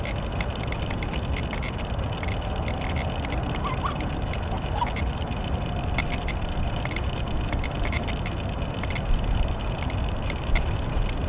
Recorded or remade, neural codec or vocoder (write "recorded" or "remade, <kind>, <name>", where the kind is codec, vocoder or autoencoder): recorded